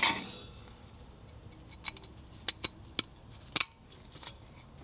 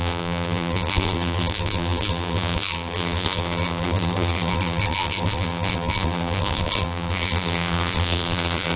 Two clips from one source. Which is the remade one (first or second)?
second